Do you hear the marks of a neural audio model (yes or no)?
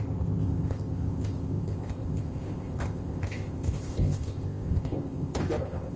yes